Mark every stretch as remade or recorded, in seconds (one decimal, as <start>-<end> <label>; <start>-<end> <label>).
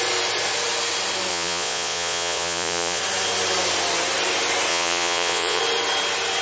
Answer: 0.0-1.3 recorded; 1.3-3.0 remade; 3.0-4.7 recorded; 4.7-5.6 remade; 5.6-6.4 recorded